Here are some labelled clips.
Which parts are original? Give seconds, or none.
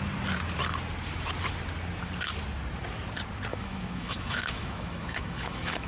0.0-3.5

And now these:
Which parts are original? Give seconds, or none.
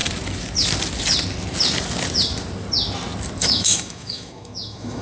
0.0-3.4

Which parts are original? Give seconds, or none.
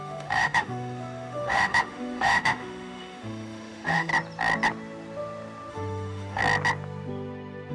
4.1-5.7; 6.4-7.7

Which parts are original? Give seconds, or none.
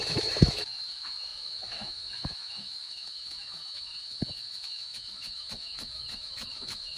none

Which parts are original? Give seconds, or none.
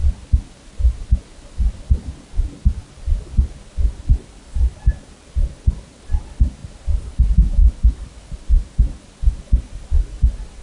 0.0-10.6